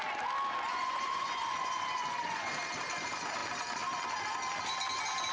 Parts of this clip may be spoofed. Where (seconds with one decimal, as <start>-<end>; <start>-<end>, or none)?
0.7-2.5

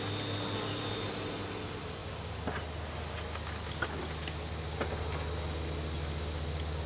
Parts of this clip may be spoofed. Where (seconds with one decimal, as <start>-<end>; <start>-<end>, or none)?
none

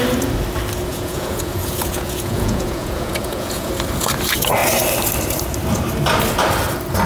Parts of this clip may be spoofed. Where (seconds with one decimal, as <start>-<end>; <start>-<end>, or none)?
0.9-3.7

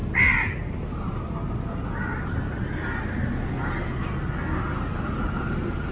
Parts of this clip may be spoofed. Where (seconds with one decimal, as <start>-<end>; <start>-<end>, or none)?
none

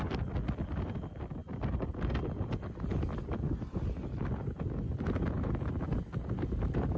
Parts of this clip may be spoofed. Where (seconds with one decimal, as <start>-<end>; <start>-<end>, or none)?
none